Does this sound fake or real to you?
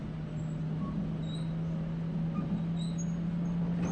real